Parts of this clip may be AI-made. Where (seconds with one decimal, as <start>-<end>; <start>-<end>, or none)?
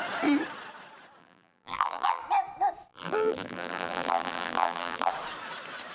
1.2-2.2; 2.9-5.1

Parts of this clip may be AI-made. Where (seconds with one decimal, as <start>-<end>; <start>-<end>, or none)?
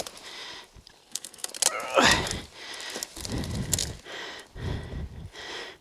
1.0-1.5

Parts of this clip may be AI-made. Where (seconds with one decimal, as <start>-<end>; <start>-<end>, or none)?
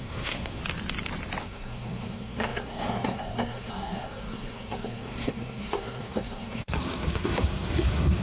0.0-0.6; 1.4-8.2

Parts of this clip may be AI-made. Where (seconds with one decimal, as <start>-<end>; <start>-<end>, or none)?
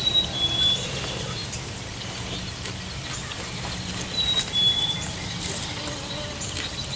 none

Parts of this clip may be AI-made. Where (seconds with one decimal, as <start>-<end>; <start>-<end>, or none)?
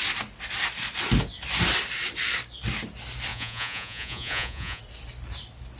3.3-4.8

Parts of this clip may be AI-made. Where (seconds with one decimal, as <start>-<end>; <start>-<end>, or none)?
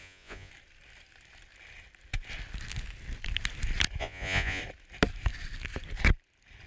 0.0-0.5; 4.0-4.6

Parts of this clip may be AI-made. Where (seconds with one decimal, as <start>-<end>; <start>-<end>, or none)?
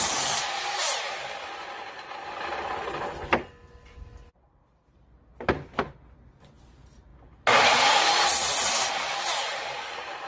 none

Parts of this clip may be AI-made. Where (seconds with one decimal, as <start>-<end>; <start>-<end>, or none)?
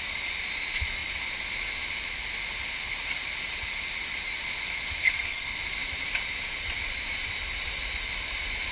5.0-5.6